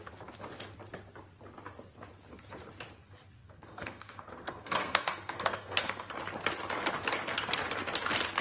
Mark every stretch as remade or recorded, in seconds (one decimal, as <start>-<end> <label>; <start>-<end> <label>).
0.0-3.4 recorded; 3.4-6.1 remade; 6.1-8.4 recorded